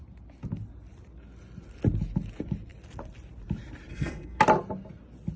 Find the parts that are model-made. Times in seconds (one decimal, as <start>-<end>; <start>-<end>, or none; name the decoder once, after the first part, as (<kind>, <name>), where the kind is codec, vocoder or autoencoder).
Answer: 3.9-4.4 (codec, SNAC)